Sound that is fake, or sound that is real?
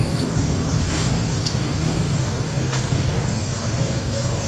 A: fake